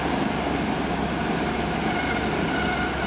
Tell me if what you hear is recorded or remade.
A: recorded